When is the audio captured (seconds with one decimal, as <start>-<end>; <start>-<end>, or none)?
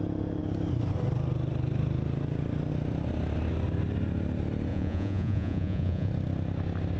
0.0-4.7; 6.1-7.0